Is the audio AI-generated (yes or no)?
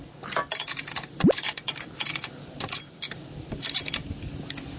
no